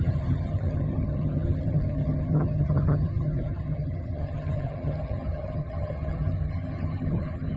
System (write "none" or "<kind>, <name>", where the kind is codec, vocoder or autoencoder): vocoder, HiFi-GAN